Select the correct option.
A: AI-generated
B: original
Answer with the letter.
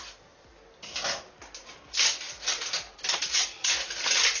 B